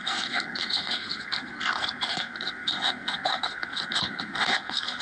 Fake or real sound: fake